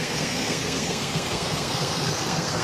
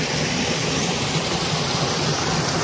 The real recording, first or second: second